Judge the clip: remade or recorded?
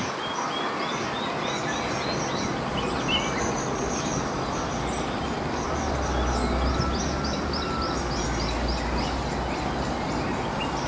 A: recorded